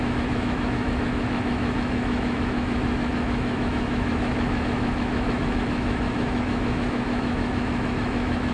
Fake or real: fake